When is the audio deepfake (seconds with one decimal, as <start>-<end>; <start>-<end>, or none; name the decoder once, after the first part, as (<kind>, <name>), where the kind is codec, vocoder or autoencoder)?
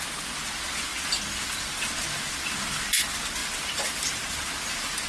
none